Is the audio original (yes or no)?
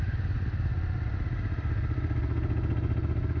yes